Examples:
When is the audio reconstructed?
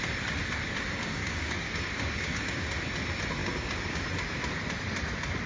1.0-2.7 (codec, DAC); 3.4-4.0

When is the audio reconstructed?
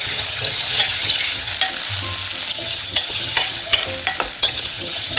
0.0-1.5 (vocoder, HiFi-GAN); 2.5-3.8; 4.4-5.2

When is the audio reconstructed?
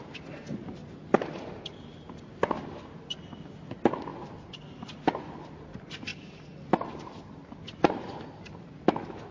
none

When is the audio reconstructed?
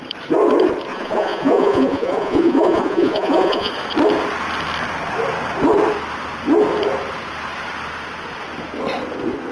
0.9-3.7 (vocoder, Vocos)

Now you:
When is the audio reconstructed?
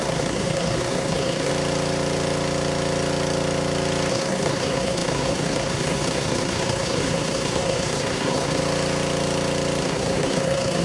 0.0-1.5 (codec, SNAC); 4.1-8.6; 9.8-10.8